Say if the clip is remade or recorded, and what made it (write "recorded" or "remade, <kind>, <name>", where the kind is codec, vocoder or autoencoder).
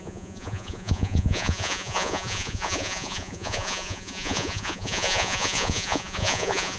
remade, vocoder, Vocos